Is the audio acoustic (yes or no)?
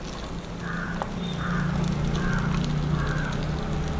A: yes